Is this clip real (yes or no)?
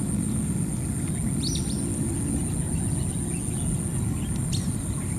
yes